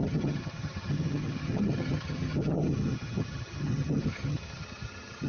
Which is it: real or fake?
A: fake